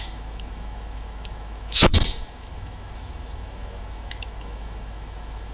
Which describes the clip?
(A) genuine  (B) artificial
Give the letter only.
B